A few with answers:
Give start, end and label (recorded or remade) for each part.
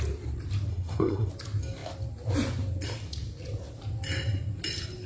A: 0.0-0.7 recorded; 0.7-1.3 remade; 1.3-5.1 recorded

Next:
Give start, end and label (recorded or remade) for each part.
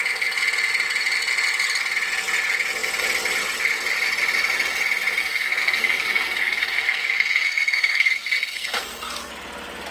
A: 0.0-5.2 recorded; 5.2-9.3 remade; 9.3-9.9 recorded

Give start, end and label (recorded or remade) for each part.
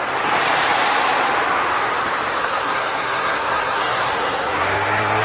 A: 0.0-2.4 recorded; 2.4-5.2 remade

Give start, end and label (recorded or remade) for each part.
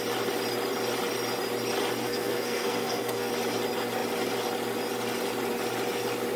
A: 0.0-2.0 recorded; 2.0-3.3 remade; 3.3-6.4 recorded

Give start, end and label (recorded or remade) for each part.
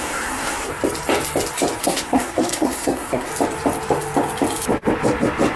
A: 0.0-0.7 remade; 0.7-1.8 recorded; 1.8-3.3 remade; 3.3-5.6 recorded